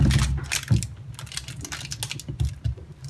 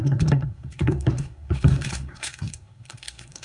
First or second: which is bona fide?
first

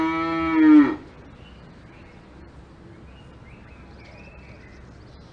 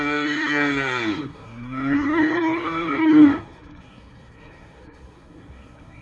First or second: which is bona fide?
first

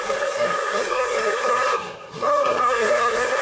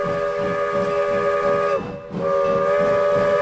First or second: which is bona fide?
second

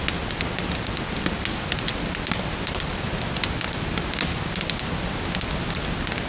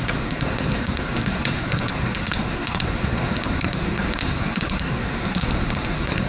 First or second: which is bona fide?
first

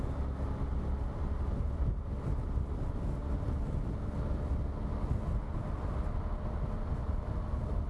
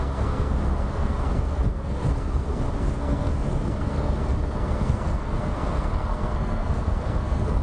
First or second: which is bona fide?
first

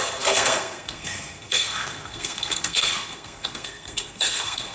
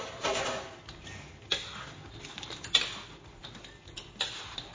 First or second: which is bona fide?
second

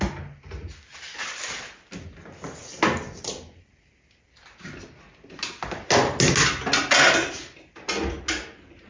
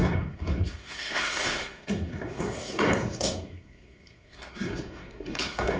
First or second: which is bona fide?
first